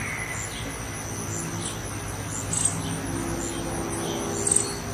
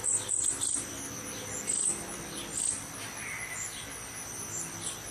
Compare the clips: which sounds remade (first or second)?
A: second